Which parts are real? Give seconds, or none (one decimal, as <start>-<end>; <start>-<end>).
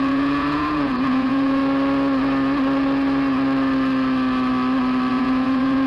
1.6-5.1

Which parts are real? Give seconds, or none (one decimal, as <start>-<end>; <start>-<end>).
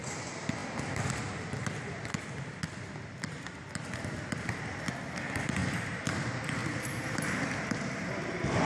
0.0-5.6; 6.1-6.6; 8.0-8.6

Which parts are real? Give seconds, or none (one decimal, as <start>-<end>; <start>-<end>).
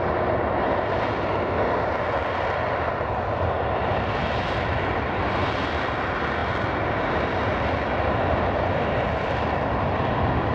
0.0-10.5